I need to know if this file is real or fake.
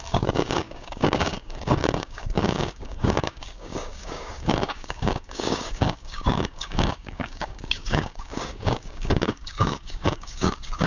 fake